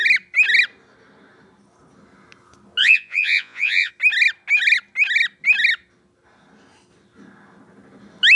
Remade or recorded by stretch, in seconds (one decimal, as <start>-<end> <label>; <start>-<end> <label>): 0.0-2.8 recorded; 2.8-3.9 remade; 3.9-8.4 recorded